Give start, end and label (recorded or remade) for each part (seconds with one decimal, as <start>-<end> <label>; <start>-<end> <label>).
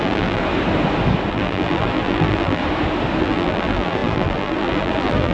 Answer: 0.0-0.4 remade; 0.4-1.3 recorded; 1.3-2.6 remade; 2.6-3.2 recorded; 3.2-5.3 remade